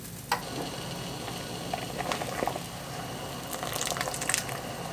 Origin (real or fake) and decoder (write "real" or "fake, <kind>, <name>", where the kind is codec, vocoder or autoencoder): real